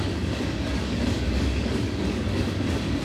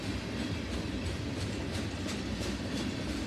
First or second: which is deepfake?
first